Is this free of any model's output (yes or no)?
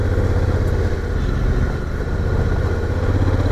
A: yes